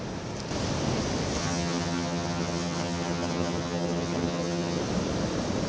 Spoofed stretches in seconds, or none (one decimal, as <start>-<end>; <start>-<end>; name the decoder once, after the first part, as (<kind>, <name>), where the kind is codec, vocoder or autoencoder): 1.4-4.8 (vocoder, HiFi-GAN)